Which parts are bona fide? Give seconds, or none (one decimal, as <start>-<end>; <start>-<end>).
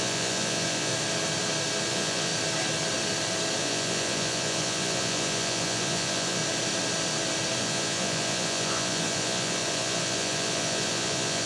0.9-1.9; 2.3-3.6; 6.4-7.6